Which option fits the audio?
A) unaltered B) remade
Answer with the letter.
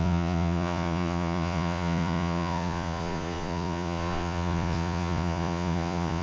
B